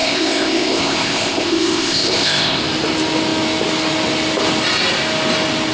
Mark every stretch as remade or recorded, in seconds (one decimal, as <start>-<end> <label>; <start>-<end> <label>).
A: 0.0-2.6 remade; 2.6-5.7 recorded